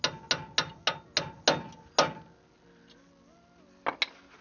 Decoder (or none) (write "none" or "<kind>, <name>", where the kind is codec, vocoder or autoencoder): none